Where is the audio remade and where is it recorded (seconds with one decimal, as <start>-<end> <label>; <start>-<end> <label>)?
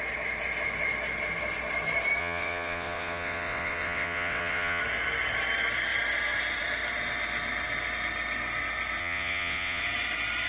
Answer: 0.0-2.2 recorded; 2.2-4.8 remade; 4.8-9.0 recorded; 9.0-9.8 remade; 9.8-10.5 recorded